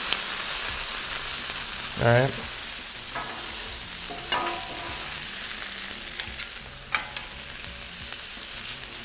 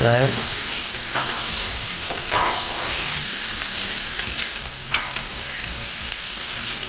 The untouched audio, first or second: first